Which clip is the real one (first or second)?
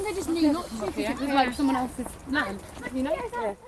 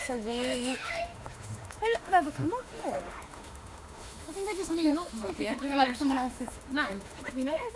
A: first